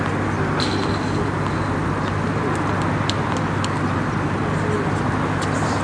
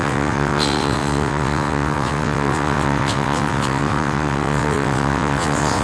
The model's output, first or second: second